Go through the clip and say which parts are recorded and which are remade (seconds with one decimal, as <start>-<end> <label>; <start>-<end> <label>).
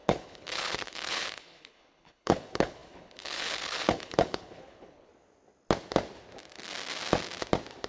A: 0.0-5.1 remade; 5.1-7.9 recorded